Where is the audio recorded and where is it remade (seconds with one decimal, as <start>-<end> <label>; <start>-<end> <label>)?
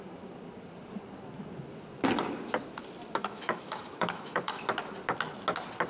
0.0-3.2 recorded; 3.2-4.6 remade; 4.6-5.9 recorded